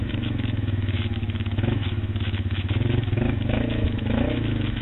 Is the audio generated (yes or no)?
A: yes